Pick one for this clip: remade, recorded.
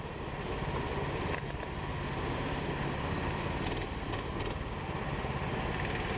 recorded